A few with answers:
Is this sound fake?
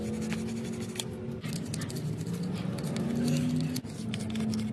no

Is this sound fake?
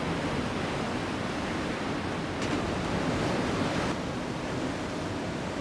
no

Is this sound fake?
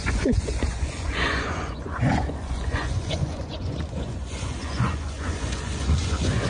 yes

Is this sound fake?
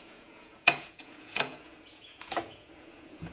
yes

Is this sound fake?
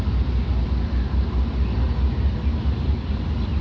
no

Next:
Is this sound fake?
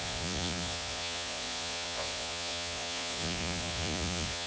yes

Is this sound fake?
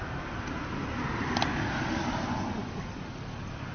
no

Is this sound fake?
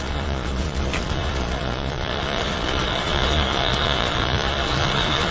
yes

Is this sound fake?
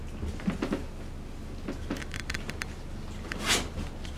no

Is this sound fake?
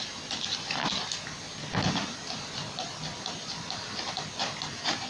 no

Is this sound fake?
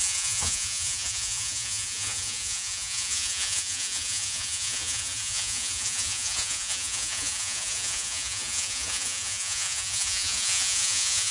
yes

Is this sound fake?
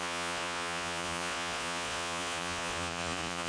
yes